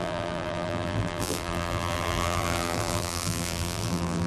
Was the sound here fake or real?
fake